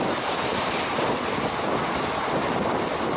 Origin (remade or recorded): recorded